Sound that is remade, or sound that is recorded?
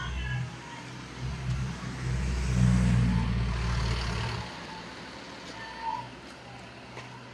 recorded